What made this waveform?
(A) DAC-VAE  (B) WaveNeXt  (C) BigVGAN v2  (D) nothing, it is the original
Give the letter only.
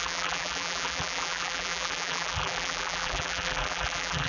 C